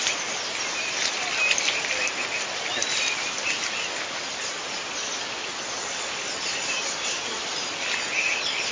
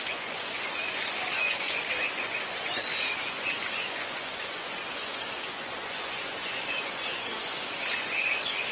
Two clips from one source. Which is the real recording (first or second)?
first